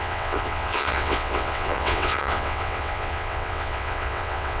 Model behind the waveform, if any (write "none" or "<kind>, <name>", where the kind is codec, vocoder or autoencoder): vocoder, WaveNeXt